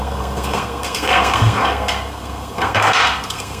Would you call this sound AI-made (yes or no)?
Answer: yes